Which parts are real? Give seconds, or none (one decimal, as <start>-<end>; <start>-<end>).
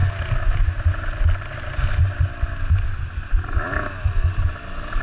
0.0-5.0